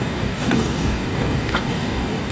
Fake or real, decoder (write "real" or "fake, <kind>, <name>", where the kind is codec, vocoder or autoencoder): fake, codec, DAC